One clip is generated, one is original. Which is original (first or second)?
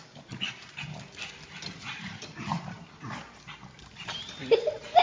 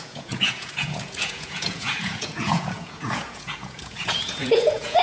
first